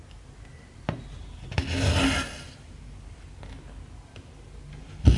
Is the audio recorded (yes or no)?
yes